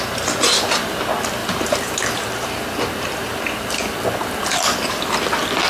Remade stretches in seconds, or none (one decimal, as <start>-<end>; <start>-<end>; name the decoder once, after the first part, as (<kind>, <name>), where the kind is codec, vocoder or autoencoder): 1.4-3.4 (vocoder, BigVGAN v2)